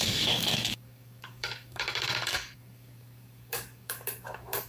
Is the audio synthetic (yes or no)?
yes